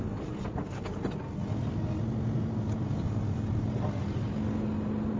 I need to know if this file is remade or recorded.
recorded